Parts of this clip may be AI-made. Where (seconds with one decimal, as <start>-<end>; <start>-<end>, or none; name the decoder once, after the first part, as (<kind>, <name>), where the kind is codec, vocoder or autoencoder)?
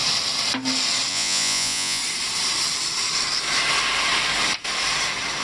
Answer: 1.1-2.0 (vocoder, Vocos)